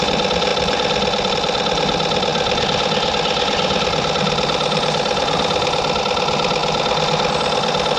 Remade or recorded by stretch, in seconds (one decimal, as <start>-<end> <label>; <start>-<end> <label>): 0.0-2.3 recorded; 2.3-6.0 remade; 6.0-6.6 recorded; 6.6-7.3 remade; 7.3-8.0 recorded